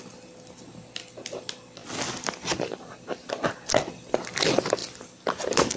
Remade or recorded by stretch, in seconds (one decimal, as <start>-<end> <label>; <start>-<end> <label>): 0.0-5.8 recorded